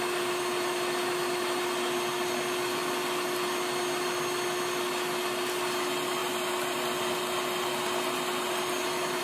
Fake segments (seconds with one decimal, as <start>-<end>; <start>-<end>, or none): none